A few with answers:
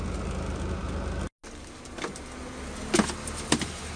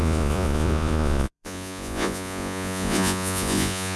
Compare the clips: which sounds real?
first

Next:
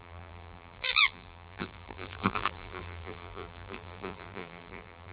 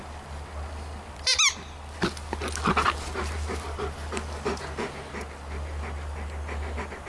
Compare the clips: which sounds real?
second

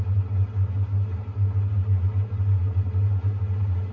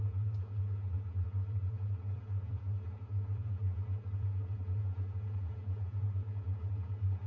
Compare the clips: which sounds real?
first